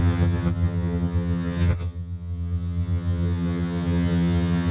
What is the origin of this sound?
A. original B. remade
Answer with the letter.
B